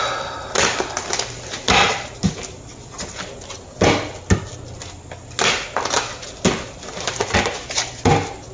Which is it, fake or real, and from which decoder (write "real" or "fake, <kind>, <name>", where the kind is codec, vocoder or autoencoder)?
real